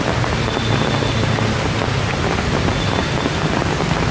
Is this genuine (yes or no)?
yes